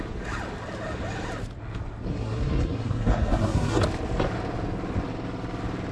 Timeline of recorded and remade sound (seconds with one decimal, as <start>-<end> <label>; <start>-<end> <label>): 0.0-2.1 recorded; 2.1-3.8 remade; 3.8-5.9 recorded